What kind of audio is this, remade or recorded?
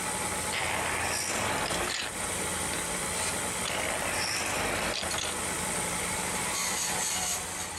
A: recorded